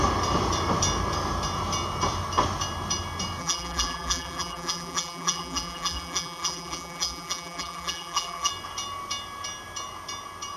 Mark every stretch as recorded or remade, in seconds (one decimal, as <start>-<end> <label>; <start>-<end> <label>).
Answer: 0.0-3.4 recorded; 3.4-8.5 remade; 8.5-10.6 recorded